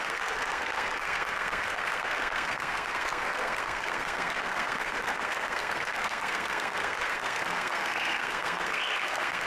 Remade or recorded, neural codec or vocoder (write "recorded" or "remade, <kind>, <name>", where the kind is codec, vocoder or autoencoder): remade, codec, SNAC